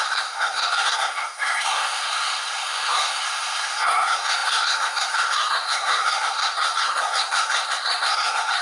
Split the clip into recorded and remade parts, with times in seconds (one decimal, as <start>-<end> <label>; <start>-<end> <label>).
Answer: 0.0-8.6 remade